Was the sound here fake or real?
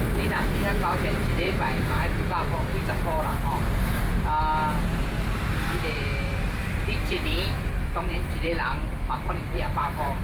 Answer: fake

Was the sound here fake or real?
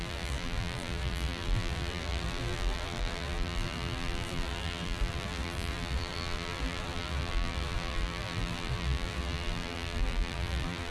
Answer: fake